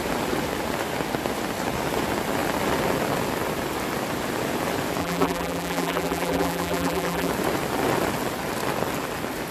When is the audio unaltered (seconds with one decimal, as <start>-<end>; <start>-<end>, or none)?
0.0-5.0; 7.3-9.5